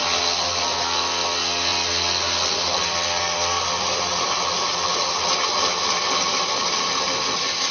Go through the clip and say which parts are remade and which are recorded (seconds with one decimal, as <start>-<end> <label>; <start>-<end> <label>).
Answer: 0.0-7.7 recorded

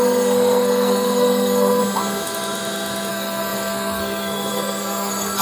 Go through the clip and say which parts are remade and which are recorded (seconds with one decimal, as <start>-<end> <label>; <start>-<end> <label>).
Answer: 0.0-1.8 remade; 1.8-3.1 recorded; 3.1-5.4 remade

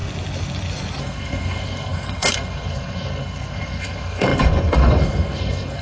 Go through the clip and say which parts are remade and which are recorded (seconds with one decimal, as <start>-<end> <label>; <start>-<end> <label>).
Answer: 0.0-1.0 recorded; 1.0-5.8 remade

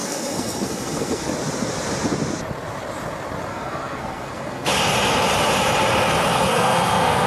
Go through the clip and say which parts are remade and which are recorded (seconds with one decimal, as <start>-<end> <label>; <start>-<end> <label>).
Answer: 0.0-1.3 remade; 1.3-3.5 recorded; 3.5-4.7 remade; 4.7-6.3 recorded; 6.3-7.3 remade

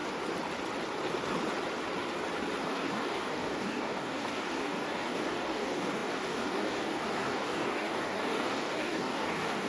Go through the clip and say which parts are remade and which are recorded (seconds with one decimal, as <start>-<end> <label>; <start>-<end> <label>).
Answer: 0.0-2.7 recorded; 2.7-9.7 remade